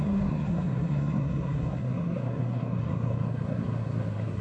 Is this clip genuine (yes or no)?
no